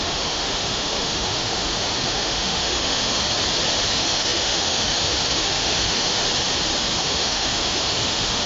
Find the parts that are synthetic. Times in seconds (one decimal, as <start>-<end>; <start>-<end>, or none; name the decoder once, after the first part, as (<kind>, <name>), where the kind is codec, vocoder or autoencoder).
0.0-3.3 (autoencoder, DAC-VAE); 3.9-6.2; 6.8-8.5